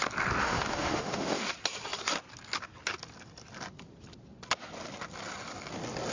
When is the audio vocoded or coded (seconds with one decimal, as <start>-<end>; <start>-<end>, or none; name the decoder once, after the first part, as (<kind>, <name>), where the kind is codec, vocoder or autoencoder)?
0.4-1.5 (autoencoder, DAC-VAE)